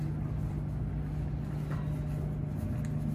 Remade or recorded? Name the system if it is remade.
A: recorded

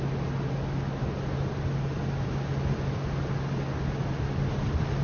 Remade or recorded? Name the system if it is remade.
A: recorded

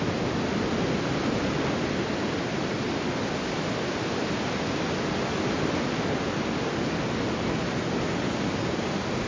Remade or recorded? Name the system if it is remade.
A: recorded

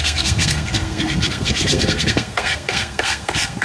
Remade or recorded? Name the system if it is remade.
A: remade, codec, SNAC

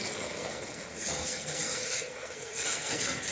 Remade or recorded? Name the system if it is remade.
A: remade, codec, SNAC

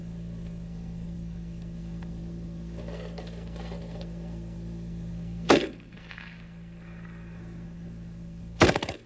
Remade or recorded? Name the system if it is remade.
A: remade, codec, SNAC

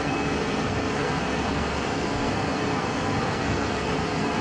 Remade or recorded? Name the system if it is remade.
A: remade, codec, SNAC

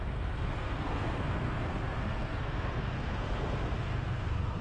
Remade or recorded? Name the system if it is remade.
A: remade, codec, SNAC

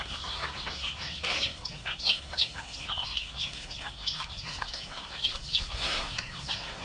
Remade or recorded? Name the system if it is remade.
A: remade, codec, SNAC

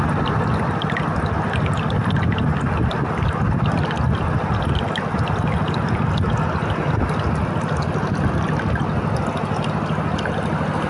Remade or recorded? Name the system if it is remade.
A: recorded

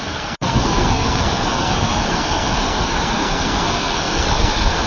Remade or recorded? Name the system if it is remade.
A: remade, codec, SNAC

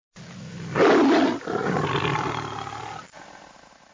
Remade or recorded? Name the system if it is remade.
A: recorded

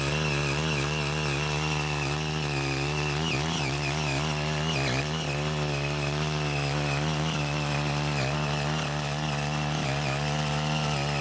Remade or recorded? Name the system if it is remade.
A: recorded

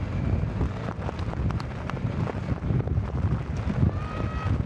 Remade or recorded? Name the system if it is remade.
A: recorded